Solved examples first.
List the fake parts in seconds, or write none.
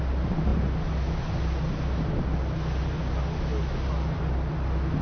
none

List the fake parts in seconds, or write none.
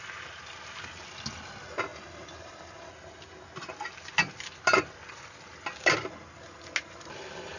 none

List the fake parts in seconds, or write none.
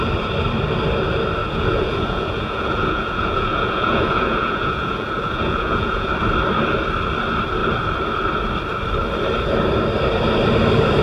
1.4-6.1 (vocoder, Vocos)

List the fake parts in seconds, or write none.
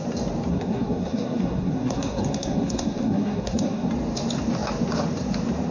0.5-3.9 (codec, SNAC)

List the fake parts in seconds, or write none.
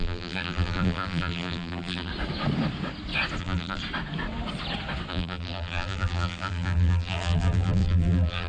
0.0-2.1 (vocoder, BigVGAN v2); 3.4-3.8; 5.1-8.5